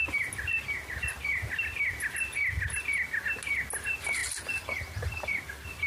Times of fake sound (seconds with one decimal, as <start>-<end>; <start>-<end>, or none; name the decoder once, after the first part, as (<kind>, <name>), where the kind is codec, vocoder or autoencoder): none